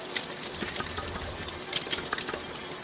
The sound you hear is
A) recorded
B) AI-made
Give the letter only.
A